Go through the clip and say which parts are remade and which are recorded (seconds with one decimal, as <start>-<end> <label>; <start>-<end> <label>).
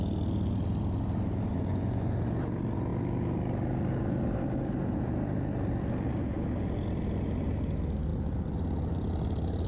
0.0-1.5 recorded; 1.5-2.1 remade; 2.1-9.7 recorded